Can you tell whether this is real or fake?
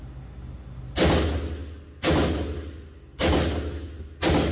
real